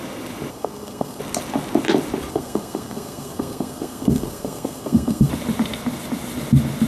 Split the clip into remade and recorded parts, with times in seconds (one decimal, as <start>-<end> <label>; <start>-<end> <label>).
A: 0.0-0.5 recorded; 0.5-1.2 remade; 1.2-2.3 recorded; 2.3-5.3 remade; 5.3-6.9 recorded